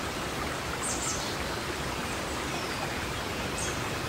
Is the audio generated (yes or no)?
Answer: yes